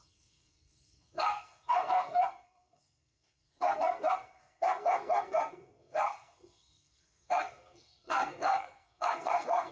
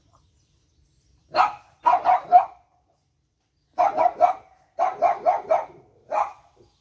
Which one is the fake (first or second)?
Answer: first